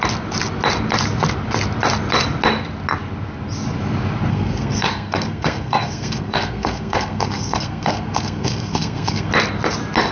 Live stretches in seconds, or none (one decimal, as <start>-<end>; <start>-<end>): 0.0-4.3; 9.3-10.1